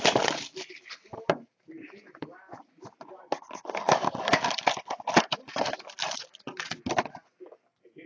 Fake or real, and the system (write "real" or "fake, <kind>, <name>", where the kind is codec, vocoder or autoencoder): real